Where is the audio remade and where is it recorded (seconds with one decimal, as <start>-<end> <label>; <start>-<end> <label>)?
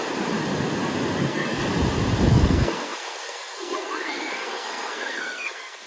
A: 0.0-1.2 recorded; 1.2-1.6 remade; 1.6-2.3 recorded; 2.3-5.9 remade